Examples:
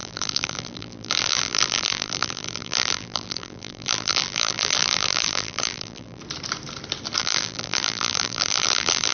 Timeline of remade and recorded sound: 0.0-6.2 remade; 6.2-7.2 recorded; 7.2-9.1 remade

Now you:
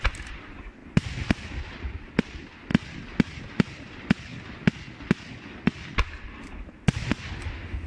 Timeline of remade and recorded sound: 0.0-7.9 recorded

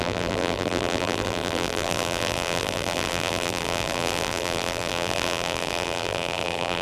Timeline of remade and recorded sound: 0.0-6.8 remade

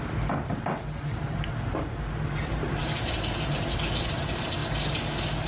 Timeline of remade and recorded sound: 0.0-5.5 recorded